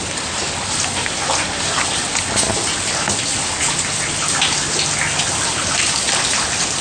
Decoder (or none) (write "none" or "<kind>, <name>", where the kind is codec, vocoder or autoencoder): none